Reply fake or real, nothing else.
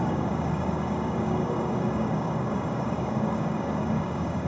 fake